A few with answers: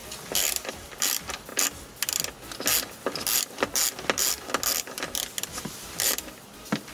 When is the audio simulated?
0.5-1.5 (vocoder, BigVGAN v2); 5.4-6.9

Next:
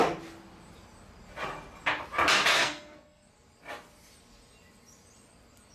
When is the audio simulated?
2.5-3.3 (codec, SNAC)

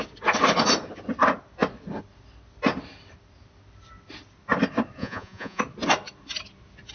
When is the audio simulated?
5.0-5.6 (vocoder, Vocos)

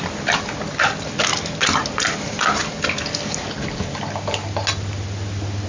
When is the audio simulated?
none

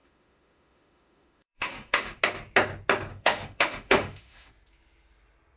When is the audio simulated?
0.0-2.2 (autoencoder, DAC-VAE); 3.1-4.5

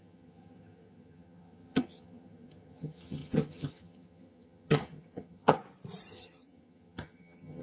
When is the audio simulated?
0.0-5.6 (vocoder, HiFi-GAN); 6.1-7.6